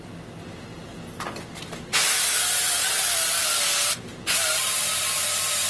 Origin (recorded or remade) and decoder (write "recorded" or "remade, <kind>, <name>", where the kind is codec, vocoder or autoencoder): recorded